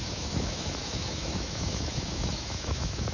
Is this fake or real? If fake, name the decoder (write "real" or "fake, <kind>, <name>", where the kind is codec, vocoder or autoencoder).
fake, autoencoder, DAC-VAE